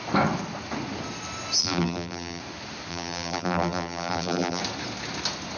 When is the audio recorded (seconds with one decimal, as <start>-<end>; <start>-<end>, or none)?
0.0-1.6; 2.4-2.9; 4.6-5.6